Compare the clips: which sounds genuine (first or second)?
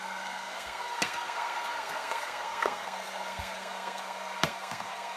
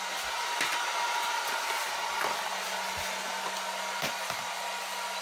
second